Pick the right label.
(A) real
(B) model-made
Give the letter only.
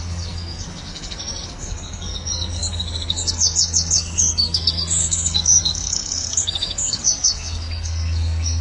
B